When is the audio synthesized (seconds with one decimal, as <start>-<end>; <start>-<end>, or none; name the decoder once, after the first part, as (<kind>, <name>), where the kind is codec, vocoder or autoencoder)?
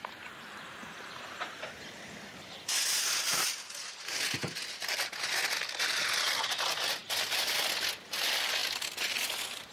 none